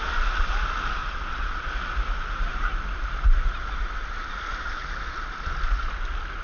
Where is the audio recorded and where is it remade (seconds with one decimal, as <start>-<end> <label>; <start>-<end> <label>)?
0.0-1.0 recorded; 1.0-1.7 remade; 1.7-6.4 recorded